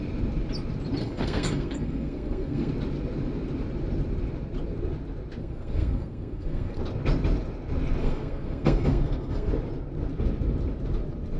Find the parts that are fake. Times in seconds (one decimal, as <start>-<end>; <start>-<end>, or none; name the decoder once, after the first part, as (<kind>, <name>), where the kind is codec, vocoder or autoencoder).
1.0-2.7 (codec, SNAC); 5.4-6.8; 8.0-9.5